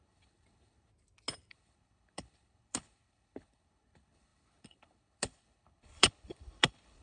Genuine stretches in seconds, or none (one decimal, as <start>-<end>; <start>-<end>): 0.9-1.5